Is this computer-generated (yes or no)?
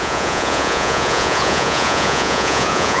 yes